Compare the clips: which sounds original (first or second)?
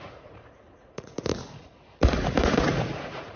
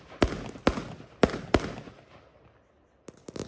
second